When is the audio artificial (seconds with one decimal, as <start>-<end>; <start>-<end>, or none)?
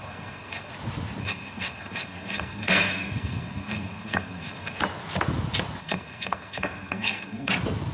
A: 0.0-0.7; 1.2-4.8; 5.8-7.5